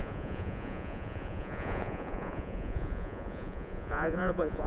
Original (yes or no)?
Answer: no